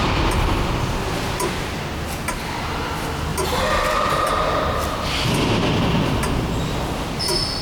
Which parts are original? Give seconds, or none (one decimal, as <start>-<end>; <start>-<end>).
0.0-7.6